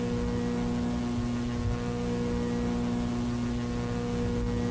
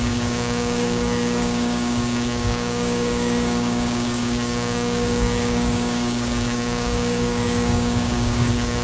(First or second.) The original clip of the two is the first